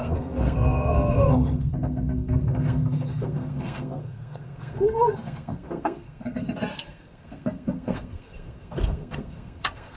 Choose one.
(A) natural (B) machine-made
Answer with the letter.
B